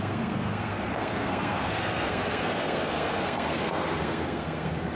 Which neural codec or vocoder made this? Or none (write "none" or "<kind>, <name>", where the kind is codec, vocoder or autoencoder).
codec, SNAC